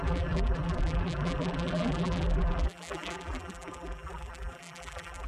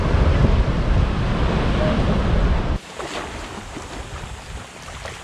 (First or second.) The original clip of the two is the second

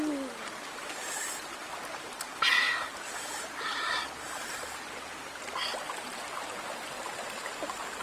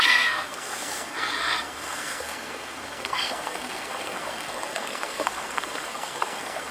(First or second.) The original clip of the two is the first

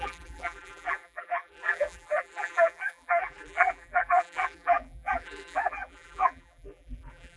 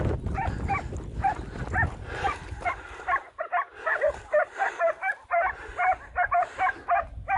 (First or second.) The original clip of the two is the second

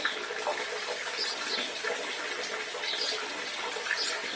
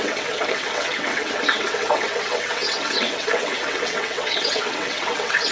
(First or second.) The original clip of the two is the first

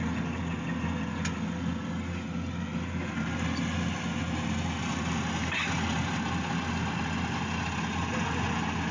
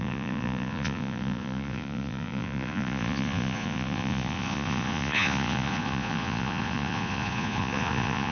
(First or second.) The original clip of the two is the first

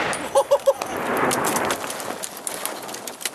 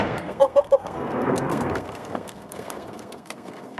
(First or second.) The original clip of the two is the first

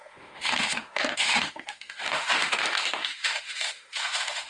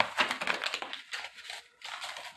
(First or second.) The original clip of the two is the second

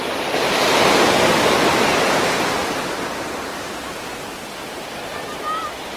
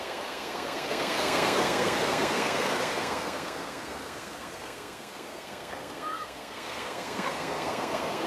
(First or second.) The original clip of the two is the first